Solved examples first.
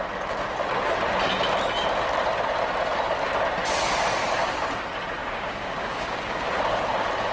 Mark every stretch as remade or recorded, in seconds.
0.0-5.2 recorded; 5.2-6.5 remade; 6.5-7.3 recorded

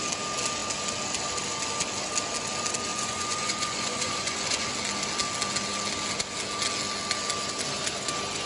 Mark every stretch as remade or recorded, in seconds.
0.0-2.9 recorded; 2.9-4.7 remade; 4.7-8.5 recorded

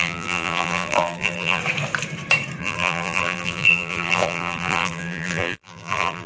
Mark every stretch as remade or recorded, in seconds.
0.0-1.6 remade; 1.6-2.6 recorded; 2.6-6.3 remade

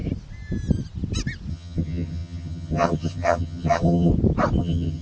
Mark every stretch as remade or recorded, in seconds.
0.0-1.5 recorded; 1.5-4.1 remade; 4.1-4.6 recorded; 4.6-5.0 remade

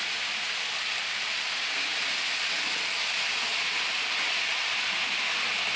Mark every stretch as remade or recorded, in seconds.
0.0-5.8 recorded

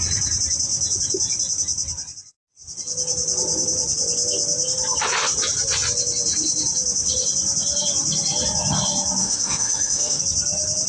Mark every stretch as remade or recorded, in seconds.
0.0-9.2 recorded; 9.2-10.2 remade; 10.2-10.9 recorded

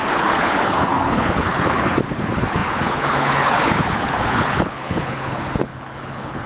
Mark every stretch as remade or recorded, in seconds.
0.0-6.5 remade